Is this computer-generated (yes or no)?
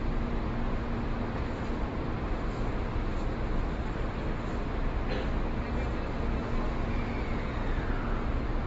no